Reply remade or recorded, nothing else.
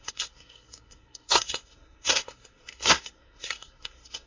remade